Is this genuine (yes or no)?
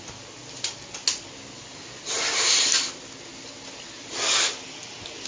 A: yes